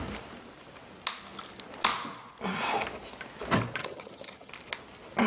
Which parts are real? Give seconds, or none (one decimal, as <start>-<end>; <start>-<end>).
0.0-3.8; 4.5-5.3